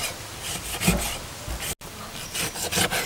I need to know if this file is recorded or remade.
recorded